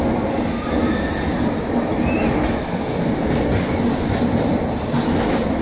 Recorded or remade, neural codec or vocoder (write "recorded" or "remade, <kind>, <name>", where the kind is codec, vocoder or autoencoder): recorded